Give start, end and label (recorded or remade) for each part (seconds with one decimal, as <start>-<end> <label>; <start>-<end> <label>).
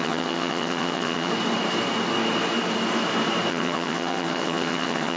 0.0-1.3 remade; 1.3-3.5 recorded; 3.5-5.2 remade